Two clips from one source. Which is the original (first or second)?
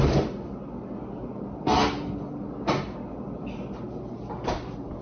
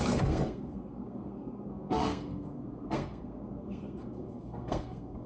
first